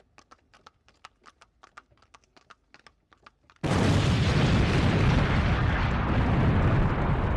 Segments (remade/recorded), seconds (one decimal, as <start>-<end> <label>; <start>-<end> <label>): 0.0-7.4 recorded